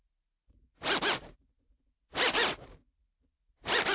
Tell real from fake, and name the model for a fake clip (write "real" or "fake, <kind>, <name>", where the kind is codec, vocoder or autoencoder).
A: fake, vocoder, BigVGAN v2